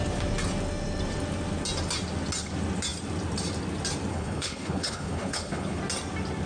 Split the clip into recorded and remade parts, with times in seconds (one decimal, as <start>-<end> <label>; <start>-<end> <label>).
0.0-4.1 recorded; 4.1-5.8 remade; 5.8-6.5 recorded